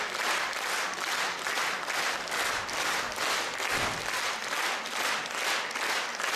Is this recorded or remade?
recorded